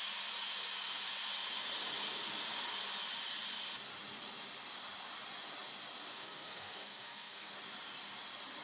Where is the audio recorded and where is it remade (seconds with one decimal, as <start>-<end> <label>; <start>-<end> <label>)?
0.0-6.1 recorded; 6.1-7.5 remade; 7.5-8.6 recorded